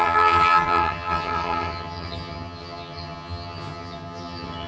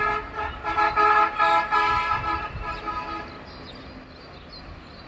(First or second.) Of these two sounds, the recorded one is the second